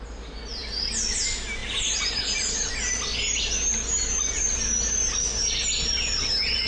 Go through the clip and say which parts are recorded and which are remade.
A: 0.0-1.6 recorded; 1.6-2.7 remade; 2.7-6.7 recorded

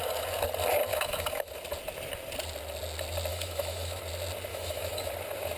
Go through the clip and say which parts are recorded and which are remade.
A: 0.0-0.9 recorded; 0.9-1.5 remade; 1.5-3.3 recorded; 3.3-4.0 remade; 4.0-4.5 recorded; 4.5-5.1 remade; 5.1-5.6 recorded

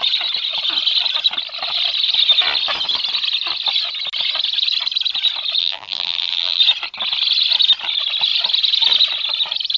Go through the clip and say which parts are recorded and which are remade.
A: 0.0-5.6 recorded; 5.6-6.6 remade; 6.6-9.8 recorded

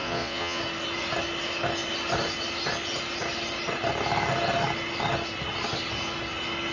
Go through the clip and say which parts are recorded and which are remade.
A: 0.0-0.6 remade; 0.6-6.7 recorded

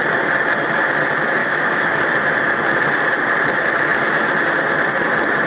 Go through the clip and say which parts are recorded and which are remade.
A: 0.0-1.4 recorded; 1.4-2.0 remade; 2.0-5.5 recorded

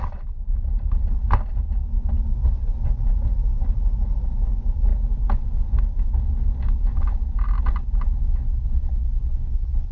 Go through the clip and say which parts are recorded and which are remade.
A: 0.0-4.9 remade; 4.9-9.5 recorded; 9.5-9.9 remade

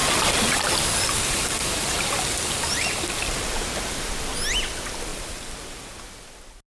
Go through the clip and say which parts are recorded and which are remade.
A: 0.0-4.1 remade; 4.1-5.1 recorded; 5.1-5.9 remade; 5.9-6.8 recorded

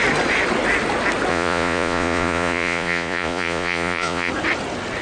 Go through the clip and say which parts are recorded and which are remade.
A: 0.0-1.3 recorded; 1.3-4.3 remade; 4.3-5.0 recorded